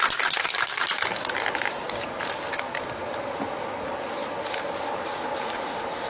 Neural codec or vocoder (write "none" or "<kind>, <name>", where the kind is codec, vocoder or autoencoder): none